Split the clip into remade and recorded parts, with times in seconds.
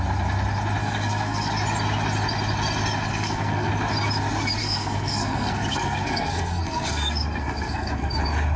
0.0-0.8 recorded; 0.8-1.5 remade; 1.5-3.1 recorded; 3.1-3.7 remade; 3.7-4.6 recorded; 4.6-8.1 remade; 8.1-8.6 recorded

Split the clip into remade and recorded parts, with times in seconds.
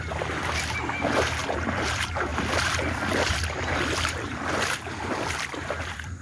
0.0-6.2 recorded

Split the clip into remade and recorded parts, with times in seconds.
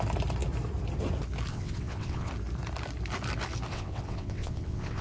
0.0-1.5 recorded; 1.5-2.3 remade; 2.3-3.7 recorded; 3.7-5.0 remade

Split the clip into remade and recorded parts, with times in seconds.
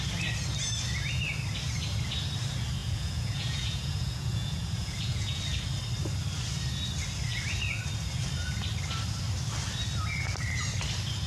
0.0-2.8 recorded; 2.8-5.4 remade; 5.4-11.3 recorded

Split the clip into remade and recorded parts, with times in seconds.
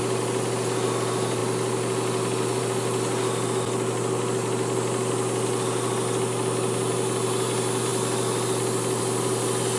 0.0-9.8 recorded